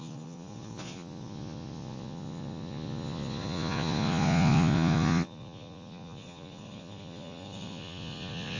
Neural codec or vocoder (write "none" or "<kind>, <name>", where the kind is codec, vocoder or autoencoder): vocoder, Vocos